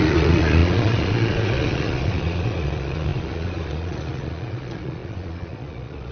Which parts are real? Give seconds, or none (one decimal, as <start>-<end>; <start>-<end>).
none

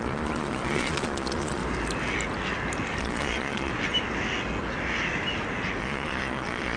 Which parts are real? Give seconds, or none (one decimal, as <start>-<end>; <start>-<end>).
1.6-3.0; 3.7-5.8

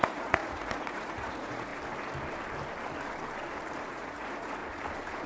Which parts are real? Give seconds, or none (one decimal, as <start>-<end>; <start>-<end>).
1.7-3.9; 4.6-5.3

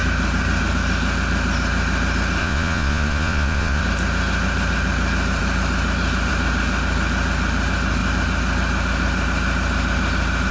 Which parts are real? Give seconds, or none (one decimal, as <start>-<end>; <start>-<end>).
0.0-2.4; 3.8-10.5

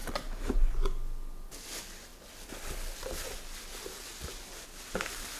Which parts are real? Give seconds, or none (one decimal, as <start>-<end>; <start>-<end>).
0.0-5.4

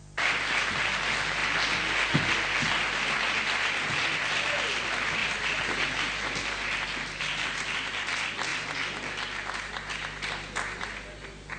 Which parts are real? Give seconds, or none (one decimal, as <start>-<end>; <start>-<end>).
0.0-11.6

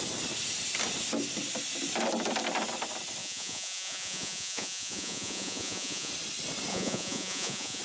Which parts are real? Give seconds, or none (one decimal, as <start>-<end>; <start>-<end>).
0.0-3.2; 6.1-6.7

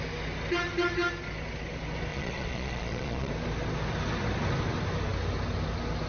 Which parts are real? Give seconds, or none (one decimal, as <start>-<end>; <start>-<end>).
0.0-2.1; 3.3-6.1